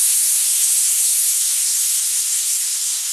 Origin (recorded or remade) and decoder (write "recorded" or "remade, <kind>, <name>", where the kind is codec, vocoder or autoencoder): remade, codec, SNAC